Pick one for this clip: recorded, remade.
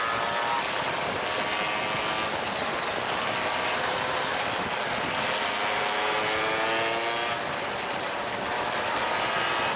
recorded